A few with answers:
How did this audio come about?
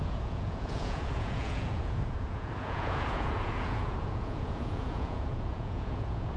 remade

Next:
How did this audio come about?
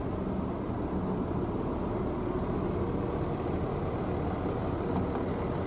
recorded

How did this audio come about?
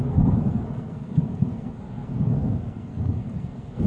remade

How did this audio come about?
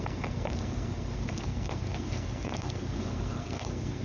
remade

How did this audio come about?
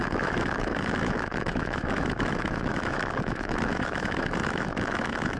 remade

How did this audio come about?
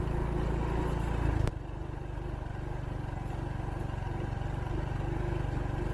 recorded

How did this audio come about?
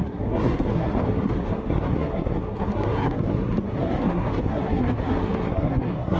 remade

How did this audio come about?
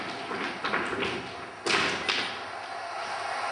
recorded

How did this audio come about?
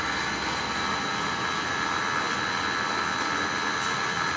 recorded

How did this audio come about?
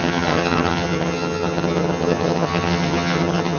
remade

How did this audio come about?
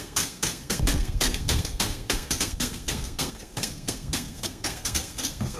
remade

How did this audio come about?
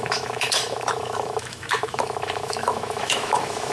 remade